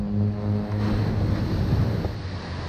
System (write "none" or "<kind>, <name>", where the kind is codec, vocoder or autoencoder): none